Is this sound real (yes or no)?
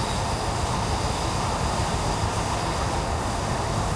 yes